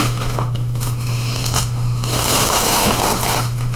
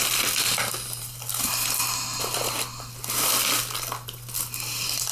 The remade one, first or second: first